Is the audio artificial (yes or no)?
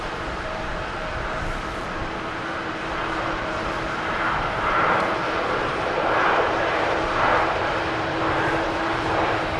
yes